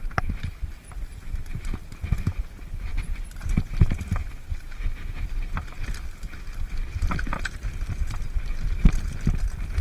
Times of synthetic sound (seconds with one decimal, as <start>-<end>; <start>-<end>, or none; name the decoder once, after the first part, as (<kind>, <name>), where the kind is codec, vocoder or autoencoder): none

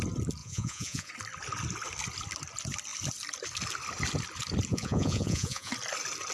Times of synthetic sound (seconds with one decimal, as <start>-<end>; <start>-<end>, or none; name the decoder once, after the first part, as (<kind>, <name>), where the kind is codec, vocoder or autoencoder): 0.4-1.1 (vocoder, Vocos); 4.7-5.7

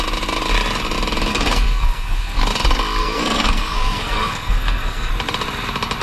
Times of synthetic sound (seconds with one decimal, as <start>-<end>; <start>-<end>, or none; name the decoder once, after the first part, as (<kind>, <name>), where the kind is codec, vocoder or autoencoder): 1.3-2.4 (codec, SNAC); 3.0-5.1